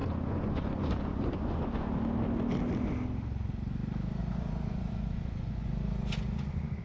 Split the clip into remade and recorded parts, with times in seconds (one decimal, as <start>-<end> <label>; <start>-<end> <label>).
0.0-1.9 remade; 1.9-4.2 recorded; 4.2-6.8 remade